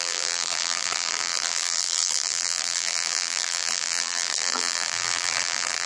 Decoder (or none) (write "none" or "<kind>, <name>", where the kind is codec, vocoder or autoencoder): vocoder, BigVGAN v2